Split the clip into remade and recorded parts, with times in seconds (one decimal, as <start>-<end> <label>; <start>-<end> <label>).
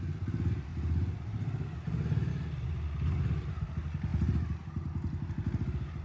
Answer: 0.0-6.0 recorded